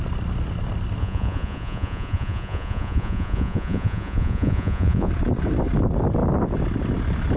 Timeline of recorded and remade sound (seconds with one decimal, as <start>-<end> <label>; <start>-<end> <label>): 0.0-1.0 recorded; 1.0-5.1 remade; 5.1-7.4 recorded